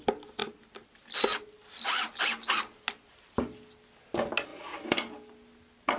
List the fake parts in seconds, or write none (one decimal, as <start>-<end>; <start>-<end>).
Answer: none